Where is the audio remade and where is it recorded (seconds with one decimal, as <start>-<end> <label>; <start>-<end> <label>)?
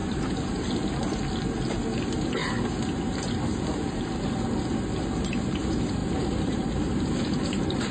0.0-0.7 remade; 0.7-6.0 recorded; 6.0-6.8 remade; 6.8-7.9 recorded